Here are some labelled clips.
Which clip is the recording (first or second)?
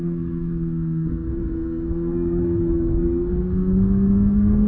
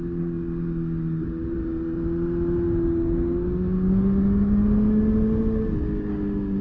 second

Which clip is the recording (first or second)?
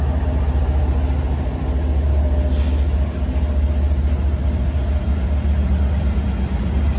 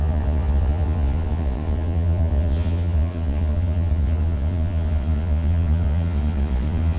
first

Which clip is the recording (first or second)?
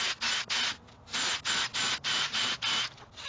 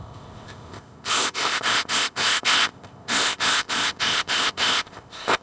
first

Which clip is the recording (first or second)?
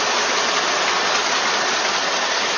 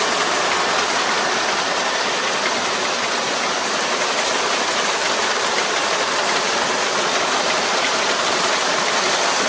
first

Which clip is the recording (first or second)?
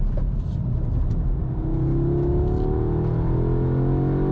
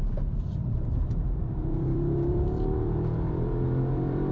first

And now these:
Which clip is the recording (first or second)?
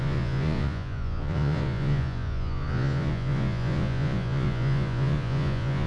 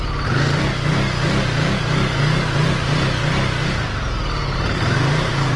second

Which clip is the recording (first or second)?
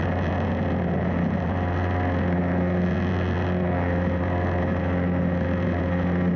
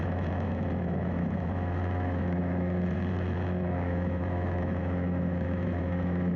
first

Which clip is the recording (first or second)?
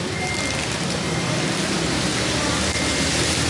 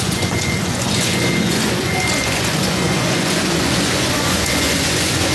first